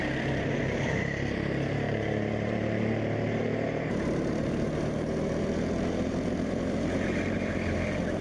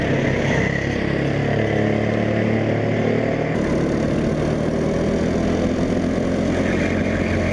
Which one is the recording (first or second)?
second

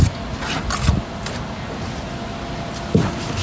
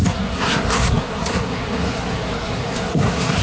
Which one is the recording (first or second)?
first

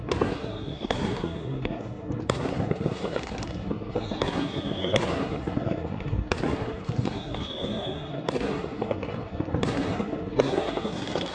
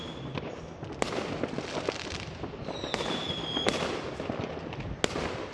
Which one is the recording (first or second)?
second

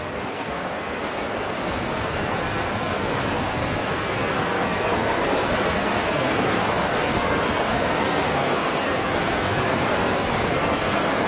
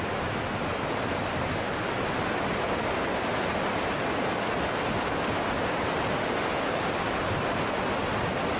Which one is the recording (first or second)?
second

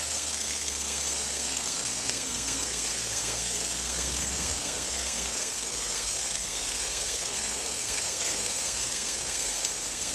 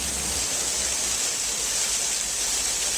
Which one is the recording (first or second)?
second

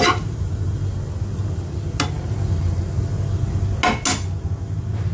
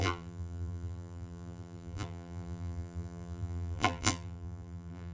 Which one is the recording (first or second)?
first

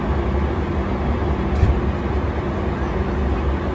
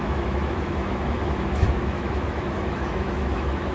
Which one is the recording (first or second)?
first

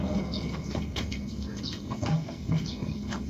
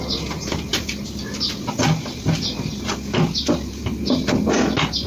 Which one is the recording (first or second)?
second